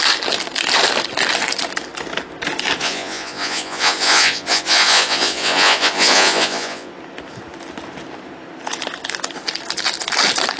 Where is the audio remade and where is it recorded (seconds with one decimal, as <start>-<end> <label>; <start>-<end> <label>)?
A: 0.0-2.8 recorded; 2.8-6.9 remade; 6.9-10.6 recorded